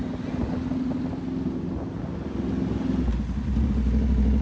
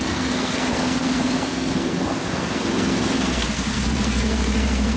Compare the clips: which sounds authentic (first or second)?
first